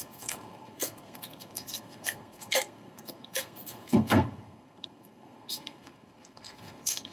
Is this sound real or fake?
fake